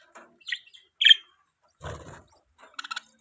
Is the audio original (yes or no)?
yes